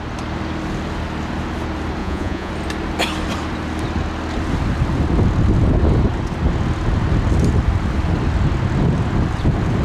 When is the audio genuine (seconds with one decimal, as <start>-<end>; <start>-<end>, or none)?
0.0-2.0; 2.5-9.8

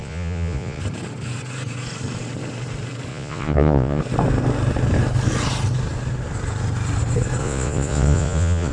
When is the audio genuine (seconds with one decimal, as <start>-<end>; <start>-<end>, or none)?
0.8-3.1; 4.0-7.4

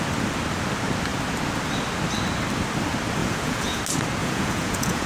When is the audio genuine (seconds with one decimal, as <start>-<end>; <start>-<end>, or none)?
0.0-3.2; 3.8-4.2

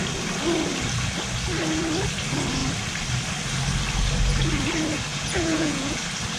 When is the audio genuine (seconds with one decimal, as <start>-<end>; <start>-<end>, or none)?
0.0-5.1; 6.0-6.4